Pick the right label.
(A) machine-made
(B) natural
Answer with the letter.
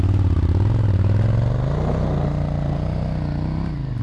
B